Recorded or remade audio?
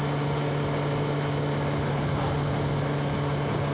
recorded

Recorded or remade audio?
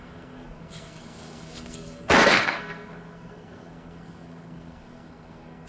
remade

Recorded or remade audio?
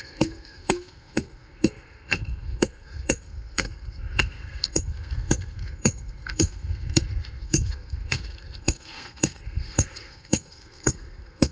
remade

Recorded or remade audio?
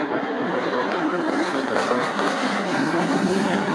remade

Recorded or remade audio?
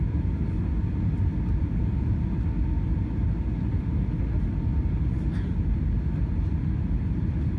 recorded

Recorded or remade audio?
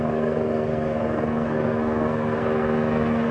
remade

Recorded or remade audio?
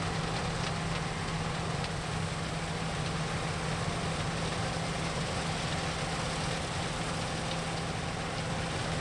recorded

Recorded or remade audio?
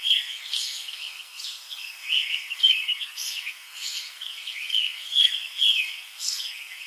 remade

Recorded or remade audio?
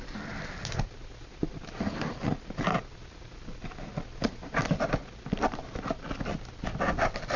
recorded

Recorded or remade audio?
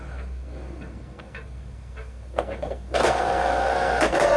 remade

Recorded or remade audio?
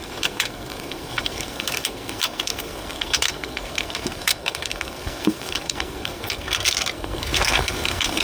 remade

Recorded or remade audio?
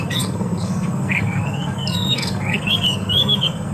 remade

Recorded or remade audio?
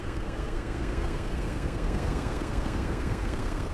remade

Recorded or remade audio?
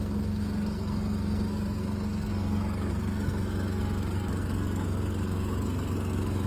remade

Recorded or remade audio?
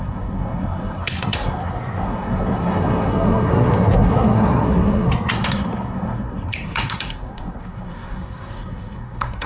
remade